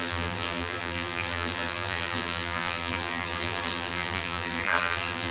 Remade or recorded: remade